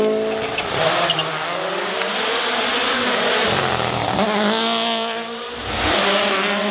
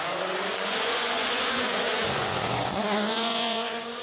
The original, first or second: first